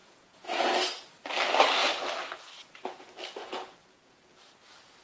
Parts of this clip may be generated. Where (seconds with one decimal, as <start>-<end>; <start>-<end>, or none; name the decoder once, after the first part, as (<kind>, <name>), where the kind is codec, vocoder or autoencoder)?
0.0-0.7 (vocoder, Vocos); 3.4-4.2